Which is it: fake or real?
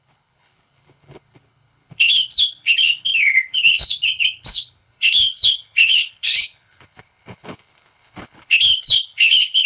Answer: fake